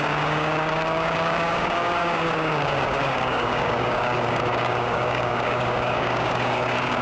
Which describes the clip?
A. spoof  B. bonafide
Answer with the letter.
A